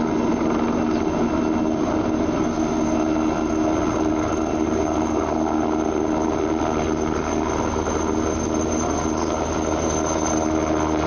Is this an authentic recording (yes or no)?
yes